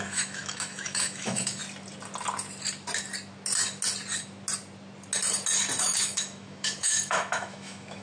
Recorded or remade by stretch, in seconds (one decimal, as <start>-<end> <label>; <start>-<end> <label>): 0.0-1.6 remade; 1.6-5.8 recorded; 5.8-8.0 remade